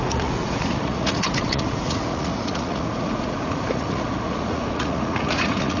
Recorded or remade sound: remade